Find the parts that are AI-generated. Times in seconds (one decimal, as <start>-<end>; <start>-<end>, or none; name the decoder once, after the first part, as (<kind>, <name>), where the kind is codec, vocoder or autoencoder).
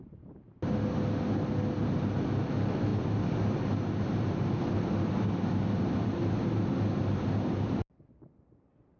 2.9-7.8 (vocoder, BigVGAN v2)